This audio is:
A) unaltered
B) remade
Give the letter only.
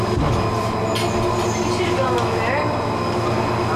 A